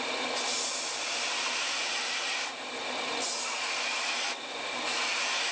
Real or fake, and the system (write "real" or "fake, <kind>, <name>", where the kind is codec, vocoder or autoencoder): real